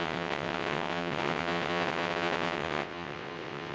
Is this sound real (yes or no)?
no